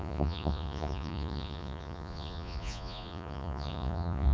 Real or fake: fake